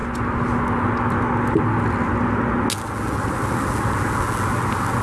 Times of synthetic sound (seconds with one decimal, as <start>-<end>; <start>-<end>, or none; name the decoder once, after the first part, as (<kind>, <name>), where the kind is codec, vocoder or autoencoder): none